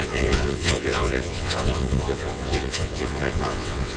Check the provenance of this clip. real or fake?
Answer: fake